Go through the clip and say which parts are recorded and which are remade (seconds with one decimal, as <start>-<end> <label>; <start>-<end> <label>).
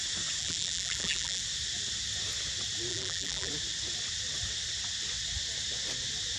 0.0-0.4 recorded; 0.4-1.4 remade; 1.4-2.9 recorded; 2.9-3.5 remade; 3.5-6.4 recorded